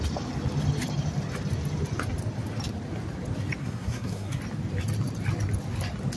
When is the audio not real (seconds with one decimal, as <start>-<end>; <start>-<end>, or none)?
3.6-4.4